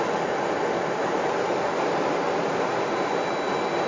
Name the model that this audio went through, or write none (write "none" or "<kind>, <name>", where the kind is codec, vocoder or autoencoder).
none